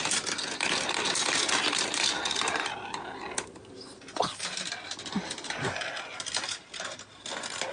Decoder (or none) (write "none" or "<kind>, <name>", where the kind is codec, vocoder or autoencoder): none